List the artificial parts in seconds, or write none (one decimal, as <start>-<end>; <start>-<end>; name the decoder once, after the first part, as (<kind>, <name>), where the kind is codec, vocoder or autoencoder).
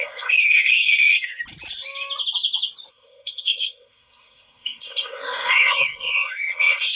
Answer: 0.0-1.4 (codec, SNAC); 2.9-7.0